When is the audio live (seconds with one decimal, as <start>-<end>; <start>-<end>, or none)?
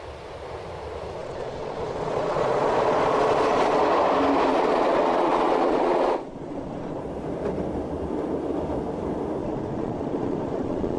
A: 0.0-1.2; 3.8-4.5; 7.0-9.4